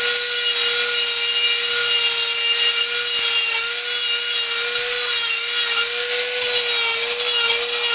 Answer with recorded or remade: recorded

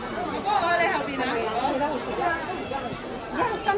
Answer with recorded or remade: recorded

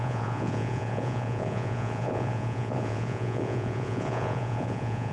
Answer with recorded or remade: remade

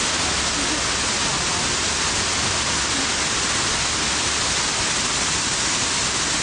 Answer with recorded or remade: recorded